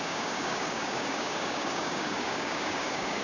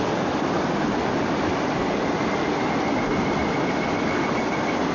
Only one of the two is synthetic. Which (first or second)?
first